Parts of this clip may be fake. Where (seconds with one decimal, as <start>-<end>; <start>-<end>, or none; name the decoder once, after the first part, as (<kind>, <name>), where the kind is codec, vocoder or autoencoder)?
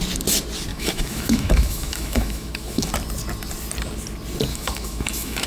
0.7-2.9 (autoencoder, DAC-VAE); 4.5-5.5